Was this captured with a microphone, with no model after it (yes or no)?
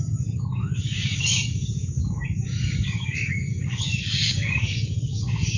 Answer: no